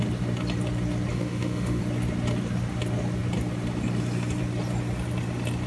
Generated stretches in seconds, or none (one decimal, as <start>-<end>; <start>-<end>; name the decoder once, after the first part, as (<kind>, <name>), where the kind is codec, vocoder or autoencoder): 1.1-1.8 (autoencoder, DAC-VAE)